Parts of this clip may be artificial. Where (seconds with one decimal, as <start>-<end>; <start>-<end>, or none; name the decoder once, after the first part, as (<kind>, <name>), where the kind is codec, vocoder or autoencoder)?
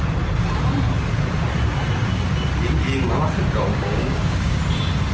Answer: 3.7-4.6 (codec, DAC)